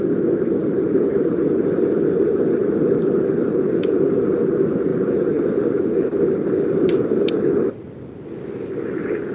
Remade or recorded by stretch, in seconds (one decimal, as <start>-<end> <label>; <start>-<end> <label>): 0.0-9.3 recorded